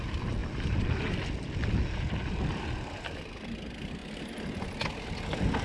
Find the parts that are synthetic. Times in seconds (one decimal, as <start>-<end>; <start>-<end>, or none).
none